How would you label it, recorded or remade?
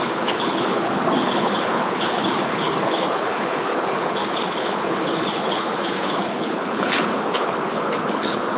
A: remade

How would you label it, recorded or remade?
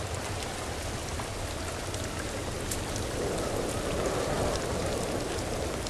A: recorded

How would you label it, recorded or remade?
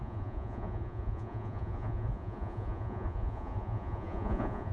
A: remade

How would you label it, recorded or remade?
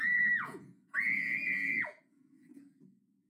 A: remade